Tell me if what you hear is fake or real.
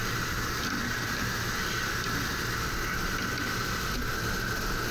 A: real